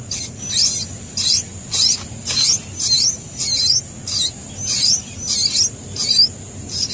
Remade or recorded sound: recorded